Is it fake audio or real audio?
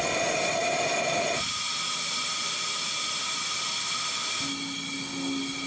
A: real